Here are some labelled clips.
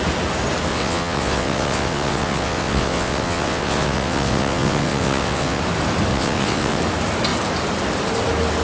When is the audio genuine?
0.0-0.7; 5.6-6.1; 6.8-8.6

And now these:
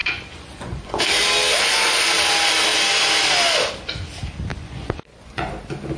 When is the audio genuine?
1.0-4.5; 5.5-6.0

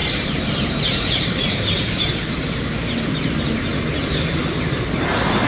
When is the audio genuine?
2.1-5.5

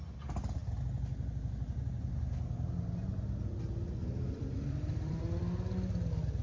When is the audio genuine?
0.0-4.0; 5.4-6.4

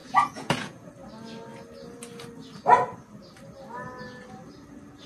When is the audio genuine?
0.9-5.1

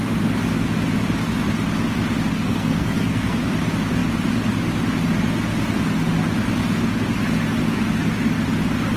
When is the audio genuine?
0.0-2.3; 3.4-9.0

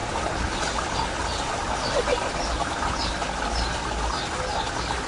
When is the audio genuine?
0.0-1.6; 3.0-4.5